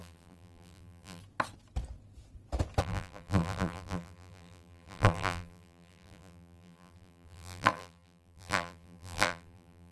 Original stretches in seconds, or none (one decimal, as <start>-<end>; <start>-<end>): 1.2-2.8